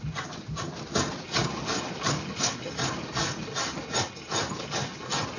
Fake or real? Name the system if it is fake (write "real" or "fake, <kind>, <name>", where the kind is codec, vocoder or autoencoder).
real